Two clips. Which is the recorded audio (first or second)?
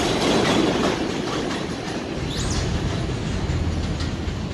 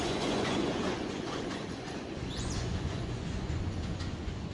first